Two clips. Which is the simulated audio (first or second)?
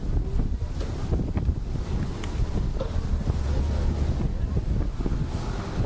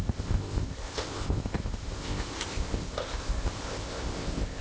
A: second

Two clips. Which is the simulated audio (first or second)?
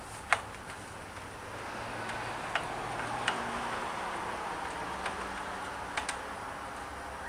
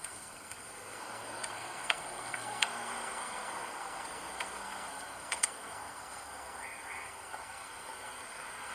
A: second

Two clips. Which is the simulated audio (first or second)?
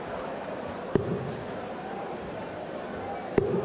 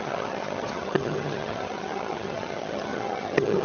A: second